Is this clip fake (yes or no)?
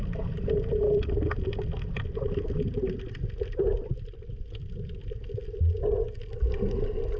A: no